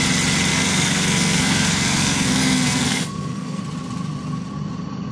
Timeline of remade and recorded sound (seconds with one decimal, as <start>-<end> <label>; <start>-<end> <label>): 0.0-0.5 recorded; 0.5-3.6 remade; 3.6-5.1 recorded